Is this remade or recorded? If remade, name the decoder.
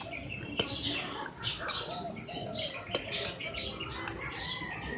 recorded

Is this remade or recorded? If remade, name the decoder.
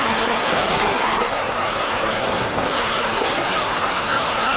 remade, codec, SNAC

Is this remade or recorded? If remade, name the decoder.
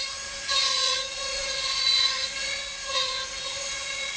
remade, vocoder, Vocos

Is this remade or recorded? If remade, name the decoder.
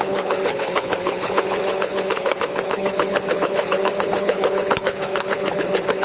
remade, codec, HILCodec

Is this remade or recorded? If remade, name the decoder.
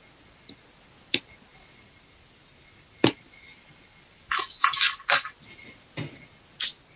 recorded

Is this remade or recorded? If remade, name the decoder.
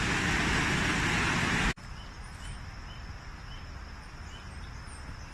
recorded